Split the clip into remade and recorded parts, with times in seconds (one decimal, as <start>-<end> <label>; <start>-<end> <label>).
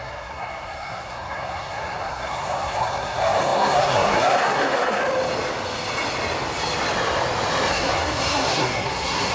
0.0-5.0 remade; 5.0-7.7 recorded; 7.7-9.3 remade